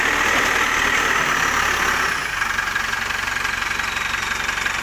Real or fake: fake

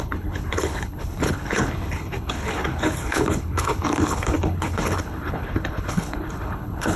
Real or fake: fake